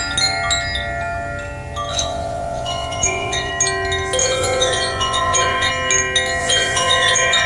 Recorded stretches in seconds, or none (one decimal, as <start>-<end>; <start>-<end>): 0.0-1.9; 3.5-4.2; 5.7-6.4